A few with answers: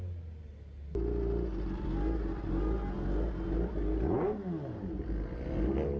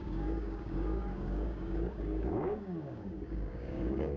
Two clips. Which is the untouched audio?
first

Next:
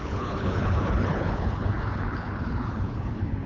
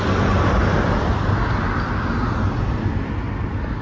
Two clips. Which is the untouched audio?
second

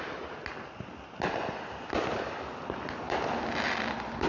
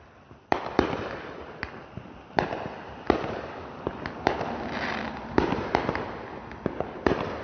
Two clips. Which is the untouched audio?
first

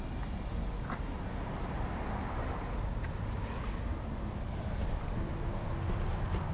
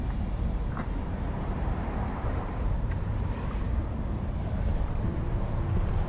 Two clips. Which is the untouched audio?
first